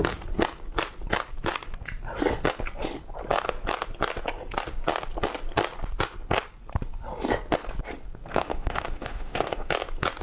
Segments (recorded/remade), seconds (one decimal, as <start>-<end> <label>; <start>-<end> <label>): 0.0-8.3 recorded; 8.3-9.7 remade; 9.7-10.2 recorded